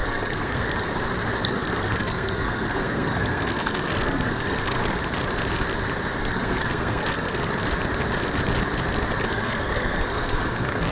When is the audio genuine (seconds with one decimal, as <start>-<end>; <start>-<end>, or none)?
0.9-1.5; 5.0-6.2; 7.5-9.2